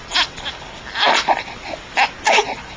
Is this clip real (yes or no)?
no